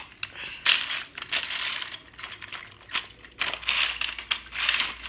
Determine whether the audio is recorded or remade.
recorded